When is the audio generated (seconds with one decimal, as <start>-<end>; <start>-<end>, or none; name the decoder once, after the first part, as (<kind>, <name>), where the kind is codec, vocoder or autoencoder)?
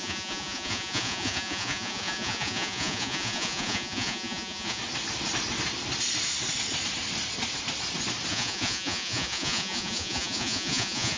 0.0-4.8 (vocoder, Vocos); 8.3-11.2